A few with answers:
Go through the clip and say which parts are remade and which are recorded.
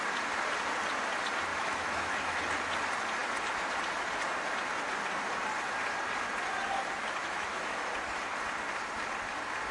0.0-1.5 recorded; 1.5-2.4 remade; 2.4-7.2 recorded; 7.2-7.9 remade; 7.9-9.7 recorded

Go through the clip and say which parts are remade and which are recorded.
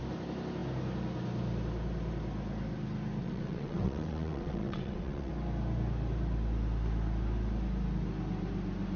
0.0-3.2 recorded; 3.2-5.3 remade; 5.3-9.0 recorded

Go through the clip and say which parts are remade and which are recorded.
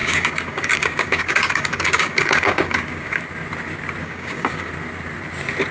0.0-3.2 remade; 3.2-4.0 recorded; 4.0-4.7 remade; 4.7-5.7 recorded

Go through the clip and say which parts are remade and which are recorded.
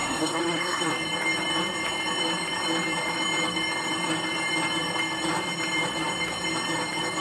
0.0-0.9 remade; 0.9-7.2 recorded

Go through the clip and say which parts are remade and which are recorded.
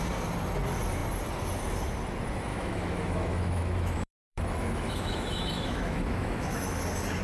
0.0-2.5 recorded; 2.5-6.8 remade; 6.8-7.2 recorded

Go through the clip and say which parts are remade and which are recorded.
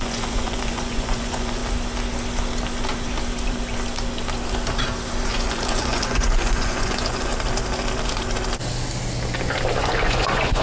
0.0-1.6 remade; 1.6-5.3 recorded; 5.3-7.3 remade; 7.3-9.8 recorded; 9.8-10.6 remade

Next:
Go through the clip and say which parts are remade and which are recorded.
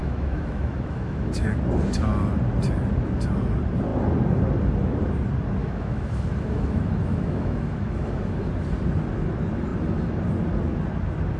0.0-1.6 remade; 1.6-5.6 recorded; 5.6-8.5 remade; 8.5-11.4 recorded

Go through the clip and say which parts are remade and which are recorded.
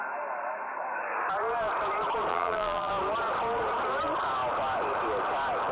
0.0-2.3 recorded; 2.3-2.9 remade; 2.9-5.7 recorded